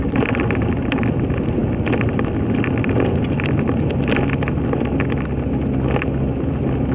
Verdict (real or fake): real